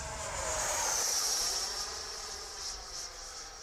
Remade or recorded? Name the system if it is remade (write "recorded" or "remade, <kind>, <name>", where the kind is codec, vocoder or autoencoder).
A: recorded